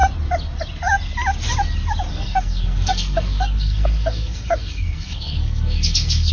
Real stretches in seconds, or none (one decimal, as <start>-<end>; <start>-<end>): 0.0-2.1